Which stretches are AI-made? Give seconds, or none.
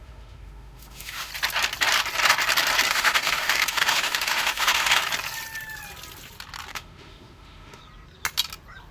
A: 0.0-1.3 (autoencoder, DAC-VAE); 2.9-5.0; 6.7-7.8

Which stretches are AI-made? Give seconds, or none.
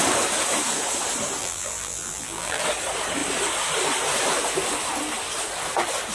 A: 1.4-2.6 (vocoder, BigVGAN v2)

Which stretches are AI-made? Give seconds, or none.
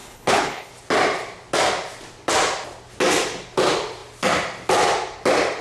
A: 0.0-0.7 (codec, HILCodec)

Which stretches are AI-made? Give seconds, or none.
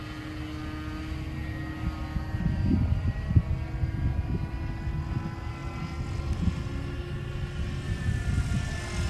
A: none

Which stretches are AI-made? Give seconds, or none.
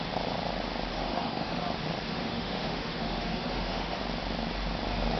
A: 0.9-1.6 (autoencoder, DAC-VAE); 2.1-4.0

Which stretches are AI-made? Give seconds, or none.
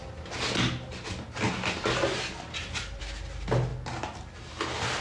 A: none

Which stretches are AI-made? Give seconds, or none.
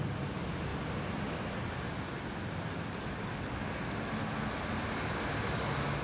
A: none